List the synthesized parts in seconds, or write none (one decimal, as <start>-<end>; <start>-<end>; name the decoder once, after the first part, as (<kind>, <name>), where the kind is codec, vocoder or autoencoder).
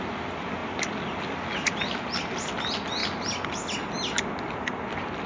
none